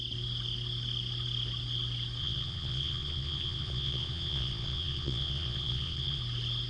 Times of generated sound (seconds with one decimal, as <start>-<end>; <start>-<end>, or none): 2.2-6.2